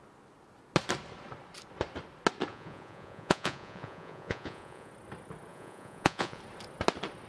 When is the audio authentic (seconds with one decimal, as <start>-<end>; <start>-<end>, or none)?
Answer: 0.0-2.5; 4.9-5.5; 6.4-7.3

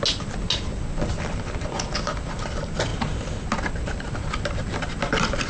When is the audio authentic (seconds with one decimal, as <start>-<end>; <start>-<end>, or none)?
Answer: 0.0-5.5

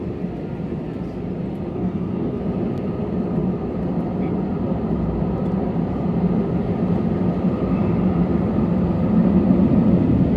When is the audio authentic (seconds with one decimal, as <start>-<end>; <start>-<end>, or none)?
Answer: 0.0-1.7; 2.4-10.4